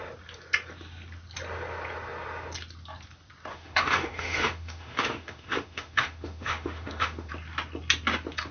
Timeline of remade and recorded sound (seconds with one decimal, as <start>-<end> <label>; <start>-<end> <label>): 0.0-3.5 recorded; 3.5-7.3 remade; 7.3-8.5 recorded